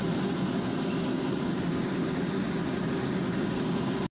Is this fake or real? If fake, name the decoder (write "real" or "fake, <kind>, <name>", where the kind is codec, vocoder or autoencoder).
real